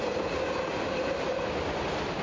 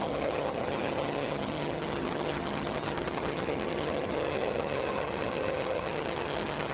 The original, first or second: first